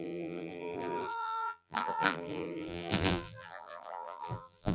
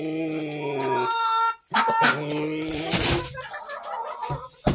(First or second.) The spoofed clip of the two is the first